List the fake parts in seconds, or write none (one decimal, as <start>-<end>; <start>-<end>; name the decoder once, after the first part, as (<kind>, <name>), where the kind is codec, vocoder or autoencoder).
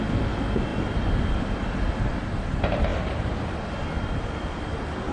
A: none